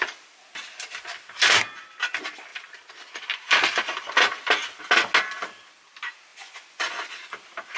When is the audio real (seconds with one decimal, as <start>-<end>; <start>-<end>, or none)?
0.0-6.3; 7.1-7.8